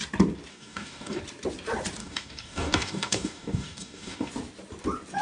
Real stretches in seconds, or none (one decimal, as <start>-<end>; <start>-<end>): 0.0-0.5; 1.2-2.0; 4.3-5.2